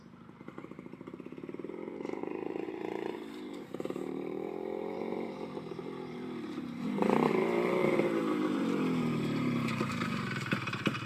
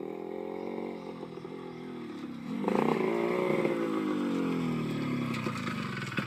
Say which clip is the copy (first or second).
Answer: first